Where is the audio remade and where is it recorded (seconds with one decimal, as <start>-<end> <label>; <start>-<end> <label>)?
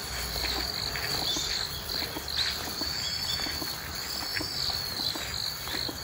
0.0-6.0 recorded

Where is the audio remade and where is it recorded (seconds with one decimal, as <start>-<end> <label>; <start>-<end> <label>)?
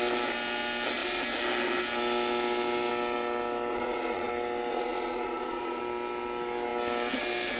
0.0-3.7 recorded; 3.7-4.3 remade; 4.3-4.7 recorded; 4.7-5.8 remade; 5.8-7.6 recorded